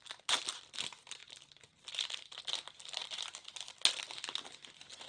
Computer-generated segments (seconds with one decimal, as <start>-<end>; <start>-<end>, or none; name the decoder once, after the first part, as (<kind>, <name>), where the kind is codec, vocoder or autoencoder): none